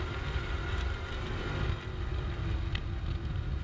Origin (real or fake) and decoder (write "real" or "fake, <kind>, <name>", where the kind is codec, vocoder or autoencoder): real